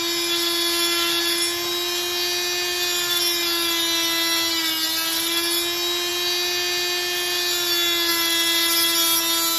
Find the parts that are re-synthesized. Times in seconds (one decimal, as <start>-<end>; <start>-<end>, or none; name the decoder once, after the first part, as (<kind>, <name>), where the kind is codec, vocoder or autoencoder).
none